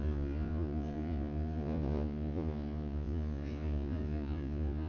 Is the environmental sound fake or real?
fake